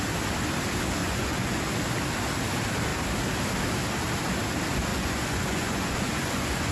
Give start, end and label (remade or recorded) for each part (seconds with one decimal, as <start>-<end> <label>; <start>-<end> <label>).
0.0-1.0 recorded; 1.0-1.6 remade; 1.6-4.9 recorded; 4.9-6.7 remade